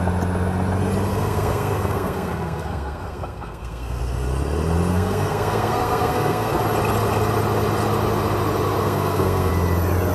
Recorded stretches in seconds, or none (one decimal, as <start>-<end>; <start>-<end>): 0.0-1.1; 4.0-4.9; 6.6-8.8; 9.5-10.1